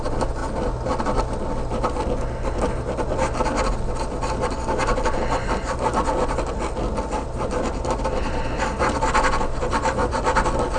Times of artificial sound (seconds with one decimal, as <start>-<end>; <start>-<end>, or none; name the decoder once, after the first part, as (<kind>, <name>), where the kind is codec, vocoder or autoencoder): none